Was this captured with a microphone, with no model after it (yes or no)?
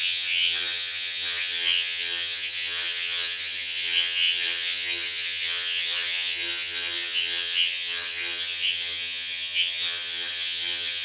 no